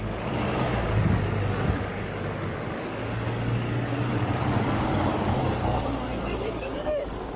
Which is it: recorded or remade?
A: remade